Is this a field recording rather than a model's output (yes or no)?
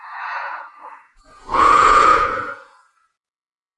no